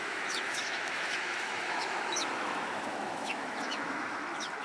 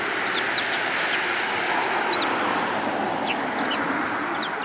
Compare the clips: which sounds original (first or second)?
second